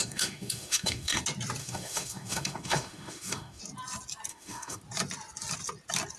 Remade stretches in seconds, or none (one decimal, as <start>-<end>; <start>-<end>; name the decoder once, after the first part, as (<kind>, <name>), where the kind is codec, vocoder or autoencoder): 0.0-1.2 (autoencoder, DAC-VAE); 1.6-3.6; 4.3-4.8